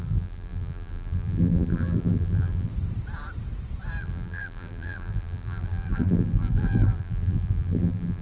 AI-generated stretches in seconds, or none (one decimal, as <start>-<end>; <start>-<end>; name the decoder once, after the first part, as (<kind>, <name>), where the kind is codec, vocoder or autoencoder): 0.0-2.7 (vocoder, BigVGAN v2); 4.0-8.2